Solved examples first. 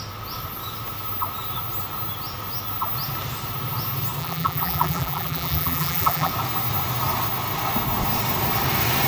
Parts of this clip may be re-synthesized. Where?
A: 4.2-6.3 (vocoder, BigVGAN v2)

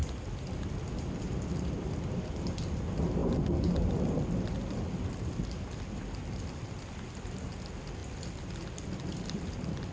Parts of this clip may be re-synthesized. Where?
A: 3.2-6.5 (vocoder, BigVGAN v2)

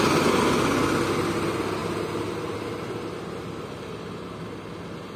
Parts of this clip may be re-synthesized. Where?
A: none

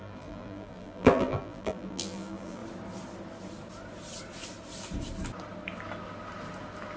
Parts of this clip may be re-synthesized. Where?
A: 0.0-2.6 (vocoder, BigVGAN v2)

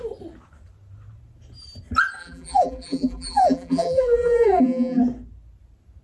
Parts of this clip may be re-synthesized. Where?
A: 2.2-5.0 (vocoder, BigVGAN v2)

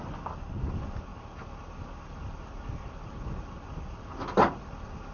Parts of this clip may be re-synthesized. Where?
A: none

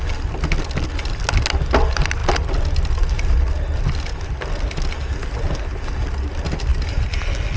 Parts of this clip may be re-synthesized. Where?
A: none